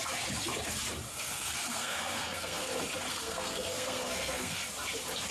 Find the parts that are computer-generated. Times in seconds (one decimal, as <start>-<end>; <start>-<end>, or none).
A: 1.1-2.7; 3.1-4.6

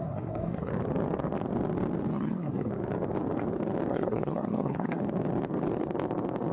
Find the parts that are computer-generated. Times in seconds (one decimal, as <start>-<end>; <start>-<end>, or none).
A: 0.0-0.7; 2.1-2.7; 3.9-5.0

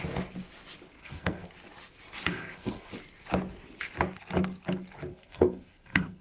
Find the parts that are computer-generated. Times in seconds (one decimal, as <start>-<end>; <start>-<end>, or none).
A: 1.0-1.5; 2.3-2.9; 5.1-6.2

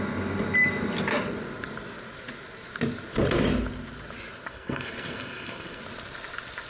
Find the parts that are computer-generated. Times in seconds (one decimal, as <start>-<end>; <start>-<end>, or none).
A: 4.5-5.8

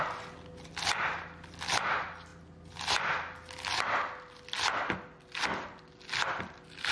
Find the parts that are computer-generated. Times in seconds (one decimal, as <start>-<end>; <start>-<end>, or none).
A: none

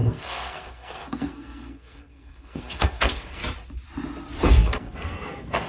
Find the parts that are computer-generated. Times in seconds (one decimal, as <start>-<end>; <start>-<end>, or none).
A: 0.0-3.4; 4.4-5.7